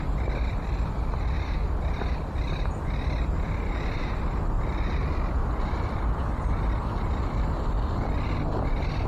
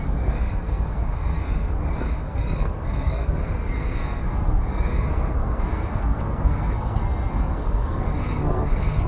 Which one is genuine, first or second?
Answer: first